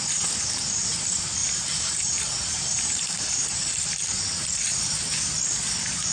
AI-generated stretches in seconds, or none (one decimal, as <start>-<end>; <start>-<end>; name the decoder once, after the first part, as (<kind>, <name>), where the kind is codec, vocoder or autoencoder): 1.4-5.1 (vocoder, BigVGAN v2)